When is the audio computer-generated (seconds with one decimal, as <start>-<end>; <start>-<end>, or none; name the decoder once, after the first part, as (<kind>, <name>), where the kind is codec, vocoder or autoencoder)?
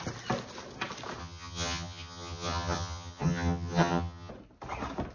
1.2-4.3 (vocoder, HiFi-GAN)